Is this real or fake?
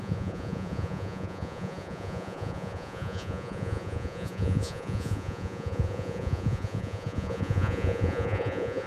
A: fake